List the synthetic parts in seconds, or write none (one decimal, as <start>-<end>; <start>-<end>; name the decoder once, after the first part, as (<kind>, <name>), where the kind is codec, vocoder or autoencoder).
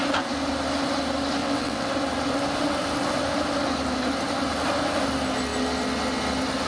1.4-1.9 (vocoder, WaveNeXt)